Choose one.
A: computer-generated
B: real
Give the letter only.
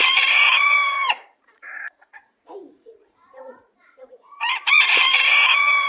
A